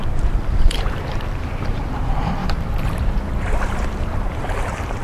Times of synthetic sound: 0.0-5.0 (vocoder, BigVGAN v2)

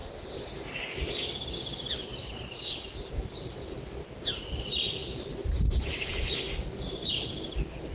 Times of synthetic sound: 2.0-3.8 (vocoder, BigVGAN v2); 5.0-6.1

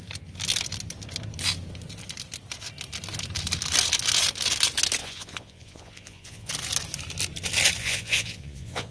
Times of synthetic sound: 5.0-6.5 (vocoder, Vocos); 7.8-8.9